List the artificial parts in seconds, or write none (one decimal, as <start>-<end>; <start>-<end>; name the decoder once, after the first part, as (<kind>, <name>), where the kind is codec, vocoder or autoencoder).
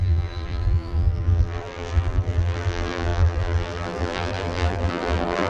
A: 0.0-5.5 (vocoder, BigVGAN v2)